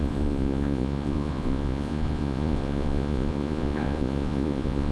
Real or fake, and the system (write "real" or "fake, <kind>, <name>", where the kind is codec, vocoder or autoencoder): fake, vocoder, Vocos